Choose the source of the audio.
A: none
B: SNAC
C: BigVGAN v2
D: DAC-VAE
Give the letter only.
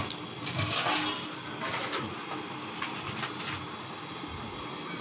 A